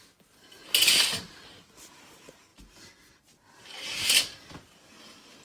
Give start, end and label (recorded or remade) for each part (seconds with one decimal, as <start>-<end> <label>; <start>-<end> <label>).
0.0-5.4 recorded